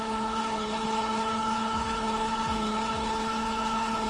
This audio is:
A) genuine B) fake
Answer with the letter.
B